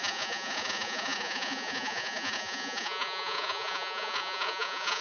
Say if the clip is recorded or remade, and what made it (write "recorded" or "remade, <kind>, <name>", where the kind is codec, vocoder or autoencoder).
remade, vocoder, Vocos